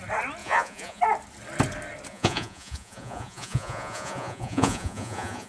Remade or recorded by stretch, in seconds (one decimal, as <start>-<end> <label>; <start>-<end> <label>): 0.0-0.4 recorded; 0.4-1.0 remade; 1.0-2.1 recorded; 2.1-5.5 remade